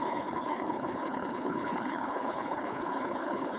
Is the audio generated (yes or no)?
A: yes